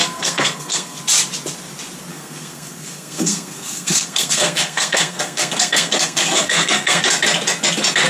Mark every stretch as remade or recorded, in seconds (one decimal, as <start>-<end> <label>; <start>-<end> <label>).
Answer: 0.0-1.0 remade; 1.0-2.1 recorded; 2.1-7.0 remade; 7.0-8.1 recorded

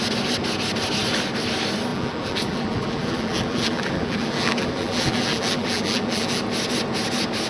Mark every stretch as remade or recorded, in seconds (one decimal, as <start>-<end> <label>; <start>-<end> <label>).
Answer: 0.0-1.9 recorded; 1.9-6.4 remade; 6.4-7.5 recorded

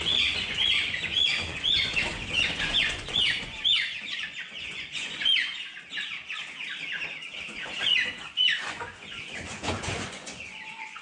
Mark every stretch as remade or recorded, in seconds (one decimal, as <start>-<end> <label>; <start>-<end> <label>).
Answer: 0.0-5.5 remade; 5.5-7.6 recorded; 7.6-11.0 remade

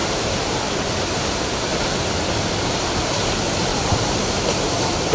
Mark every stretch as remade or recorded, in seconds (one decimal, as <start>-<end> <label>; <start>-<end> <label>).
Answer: 0.0-0.8 remade; 0.8-3.7 recorded; 3.7-4.6 remade; 4.6-5.1 recorded

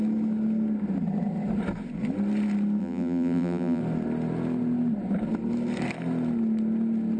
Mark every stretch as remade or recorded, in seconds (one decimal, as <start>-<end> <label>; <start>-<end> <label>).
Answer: 0.0-2.8 recorded; 2.8-3.8 remade; 3.8-7.2 recorded

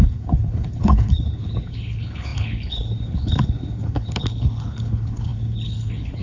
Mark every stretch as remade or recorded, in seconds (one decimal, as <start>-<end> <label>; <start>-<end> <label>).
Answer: 0.0-6.2 remade